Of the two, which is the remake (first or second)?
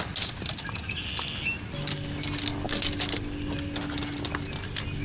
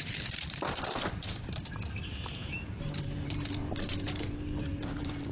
second